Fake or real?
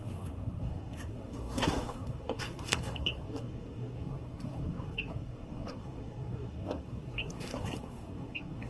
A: fake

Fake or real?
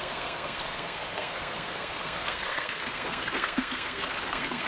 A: fake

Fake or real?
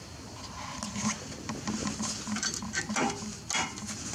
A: real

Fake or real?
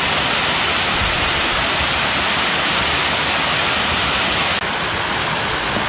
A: real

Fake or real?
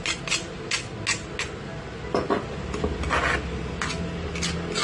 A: real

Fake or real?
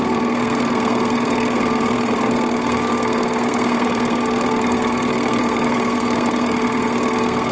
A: fake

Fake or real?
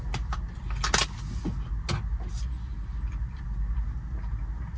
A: real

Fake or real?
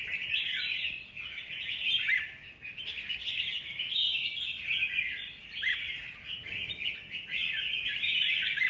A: real